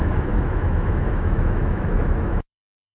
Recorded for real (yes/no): no